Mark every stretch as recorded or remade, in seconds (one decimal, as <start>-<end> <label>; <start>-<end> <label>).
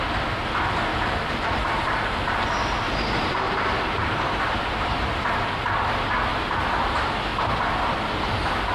0.0-0.9 recorded; 0.9-4.4 remade; 4.4-8.7 recorded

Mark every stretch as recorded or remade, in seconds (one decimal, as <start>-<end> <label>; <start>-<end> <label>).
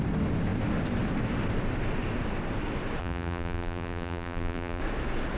0.0-3.0 recorded; 3.0-4.8 remade; 4.8-5.4 recorded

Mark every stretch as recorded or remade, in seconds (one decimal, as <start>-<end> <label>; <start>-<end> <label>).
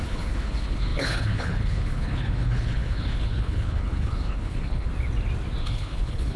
0.0-4.9 remade; 4.9-5.6 recorded; 5.6-6.4 remade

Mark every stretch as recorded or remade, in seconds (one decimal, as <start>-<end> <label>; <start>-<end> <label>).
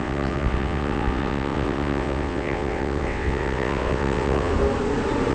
0.0-4.5 remade; 4.5-5.3 recorded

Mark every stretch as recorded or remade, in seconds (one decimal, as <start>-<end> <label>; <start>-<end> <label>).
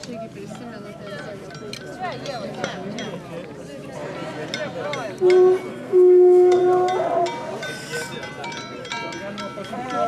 0.0-5.7 recorded; 5.7-6.6 remade; 6.6-10.1 recorded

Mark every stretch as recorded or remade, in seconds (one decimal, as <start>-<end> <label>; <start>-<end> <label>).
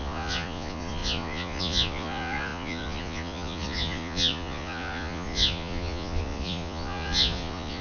0.0-7.8 remade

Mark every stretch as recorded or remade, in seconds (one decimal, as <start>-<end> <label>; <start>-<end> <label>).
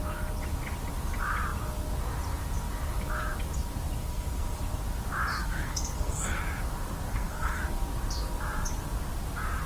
0.0-4.0 recorded; 4.0-4.6 remade; 4.6-5.3 recorded; 5.3-6.4 remade; 6.4-7.1 recorded; 7.1-7.6 remade; 7.6-9.7 recorded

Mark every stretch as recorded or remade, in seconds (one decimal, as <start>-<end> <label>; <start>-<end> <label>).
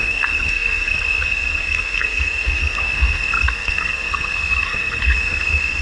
0.0-5.8 remade